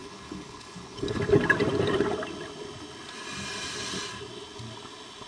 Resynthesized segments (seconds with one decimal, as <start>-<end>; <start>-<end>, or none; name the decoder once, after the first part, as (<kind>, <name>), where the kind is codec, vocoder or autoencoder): 0.0-1.2 (codec, HILCodec)